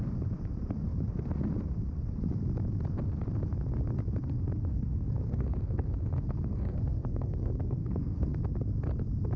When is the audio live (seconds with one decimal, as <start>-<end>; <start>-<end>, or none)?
0.0-4.7; 8.4-9.4